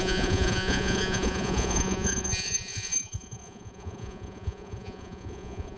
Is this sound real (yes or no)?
no